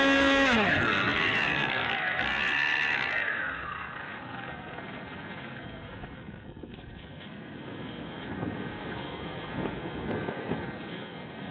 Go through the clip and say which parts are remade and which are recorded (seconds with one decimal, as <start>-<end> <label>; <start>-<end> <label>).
0.0-11.5 remade